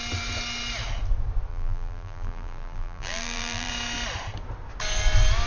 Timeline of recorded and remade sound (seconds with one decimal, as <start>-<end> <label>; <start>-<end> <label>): 0.0-1.5 recorded; 1.5-3.7 remade; 3.7-5.5 recorded